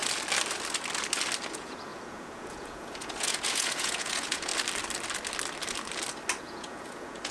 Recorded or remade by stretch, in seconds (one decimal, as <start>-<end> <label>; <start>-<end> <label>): 0.0-1.5 recorded; 1.5-4.5 remade; 4.5-6.4 recorded; 6.4-7.3 remade